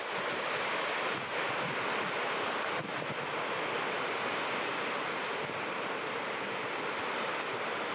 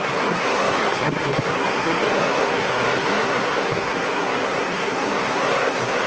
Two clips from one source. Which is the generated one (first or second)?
second